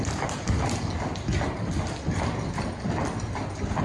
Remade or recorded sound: recorded